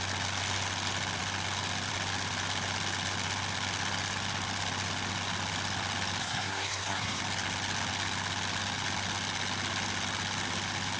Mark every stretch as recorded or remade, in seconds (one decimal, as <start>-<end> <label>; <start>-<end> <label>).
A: 0.0-6.2 recorded; 6.2-7.2 remade; 7.2-11.0 recorded